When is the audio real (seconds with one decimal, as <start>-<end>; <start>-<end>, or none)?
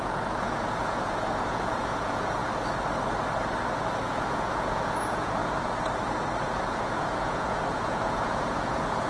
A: 2.4-4.0; 5.4-6.4